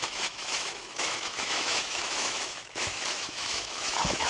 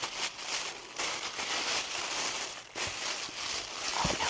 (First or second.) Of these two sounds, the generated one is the first